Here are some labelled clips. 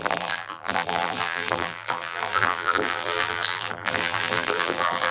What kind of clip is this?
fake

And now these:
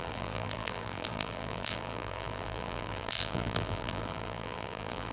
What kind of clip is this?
fake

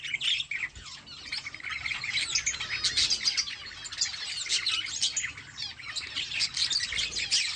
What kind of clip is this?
real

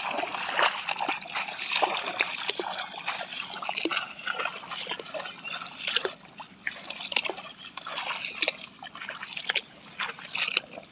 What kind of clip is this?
real